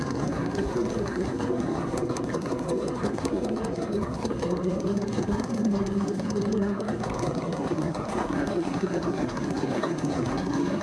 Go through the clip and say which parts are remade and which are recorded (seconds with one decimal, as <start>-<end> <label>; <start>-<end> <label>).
0.0-10.8 remade